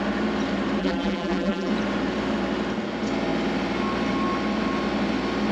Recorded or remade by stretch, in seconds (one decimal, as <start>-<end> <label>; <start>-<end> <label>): 0.0-0.8 recorded; 0.8-1.7 remade; 1.7-5.5 recorded